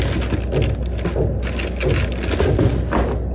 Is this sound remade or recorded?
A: recorded